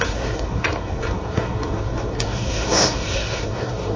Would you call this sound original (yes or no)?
no